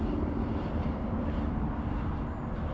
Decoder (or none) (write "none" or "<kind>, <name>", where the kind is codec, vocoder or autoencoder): none